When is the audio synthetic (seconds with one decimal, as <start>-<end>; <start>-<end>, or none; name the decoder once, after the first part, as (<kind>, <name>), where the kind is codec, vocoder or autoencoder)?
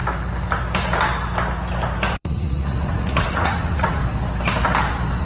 2.1-4.0 (vocoder, Vocos)